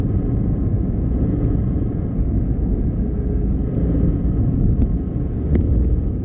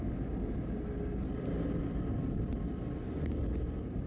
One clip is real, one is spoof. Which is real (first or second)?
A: second